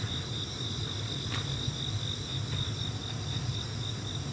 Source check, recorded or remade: recorded